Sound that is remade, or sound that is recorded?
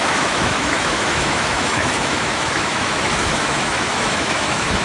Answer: remade